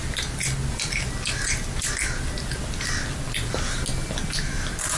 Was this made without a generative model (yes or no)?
yes